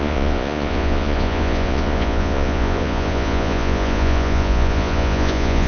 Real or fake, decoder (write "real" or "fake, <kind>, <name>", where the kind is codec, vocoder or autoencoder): fake, vocoder, Vocos